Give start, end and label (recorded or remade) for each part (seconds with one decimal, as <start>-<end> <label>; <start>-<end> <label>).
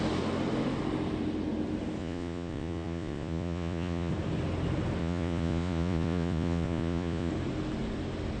0.0-2.0 recorded; 2.0-4.1 remade; 4.1-5.0 recorded; 5.0-7.3 remade; 7.3-8.4 recorded